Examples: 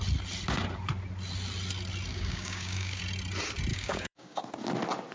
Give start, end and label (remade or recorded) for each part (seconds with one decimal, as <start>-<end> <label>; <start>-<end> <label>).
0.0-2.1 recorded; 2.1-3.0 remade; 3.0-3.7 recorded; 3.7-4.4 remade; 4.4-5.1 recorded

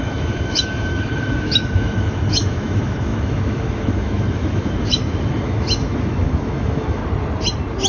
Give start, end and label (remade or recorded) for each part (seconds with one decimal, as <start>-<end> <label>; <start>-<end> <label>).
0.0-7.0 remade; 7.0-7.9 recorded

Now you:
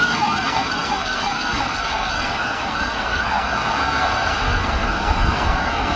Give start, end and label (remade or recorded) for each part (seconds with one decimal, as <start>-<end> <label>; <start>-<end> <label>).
0.0-6.0 remade

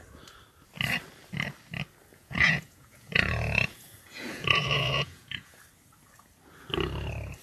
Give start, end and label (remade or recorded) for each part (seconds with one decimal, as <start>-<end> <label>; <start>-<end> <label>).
0.0-2.1 recorded; 2.1-5.6 remade; 5.6-7.4 recorded